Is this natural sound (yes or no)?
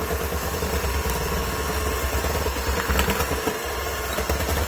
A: yes